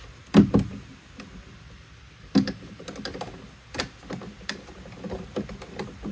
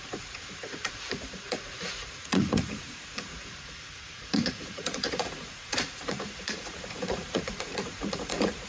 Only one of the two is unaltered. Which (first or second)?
first